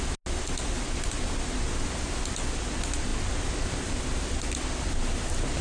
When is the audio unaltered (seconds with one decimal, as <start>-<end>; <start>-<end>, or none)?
0.0-5.6